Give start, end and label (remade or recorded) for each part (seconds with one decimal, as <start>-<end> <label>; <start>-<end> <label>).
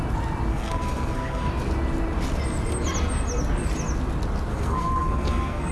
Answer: 0.0-0.5 recorded; 0.5-1.5 remade; 1.5-4.5 recorded; 4.5-5.7 remade